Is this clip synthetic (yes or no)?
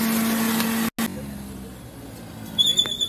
no